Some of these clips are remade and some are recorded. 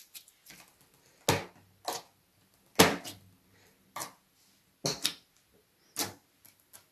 recorded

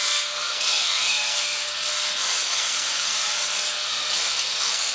remade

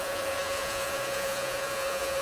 remade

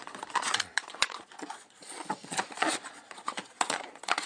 remade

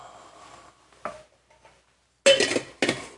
recorded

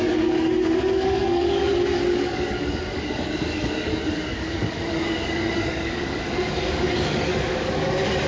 remade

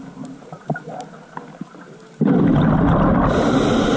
recorded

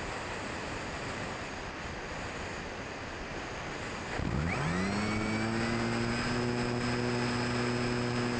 recorded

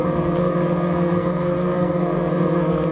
remade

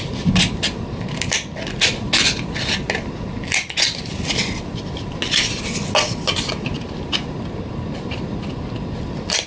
recorded